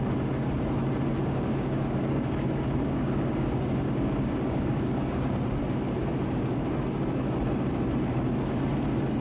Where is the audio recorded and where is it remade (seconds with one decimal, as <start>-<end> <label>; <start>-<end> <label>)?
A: 0.0-1.2 recorded; 1.2-5.3 remade; 5.3-9.2 recorded